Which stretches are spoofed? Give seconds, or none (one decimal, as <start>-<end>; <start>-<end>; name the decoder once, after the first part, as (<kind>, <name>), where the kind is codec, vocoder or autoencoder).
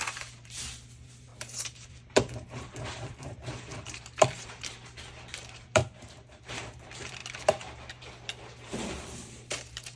0.0-5.8 (vocoder, BigVGAN v2); 6.5-10.0